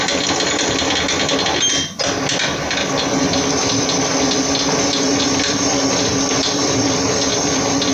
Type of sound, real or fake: real